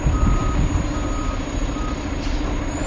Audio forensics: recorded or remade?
recorded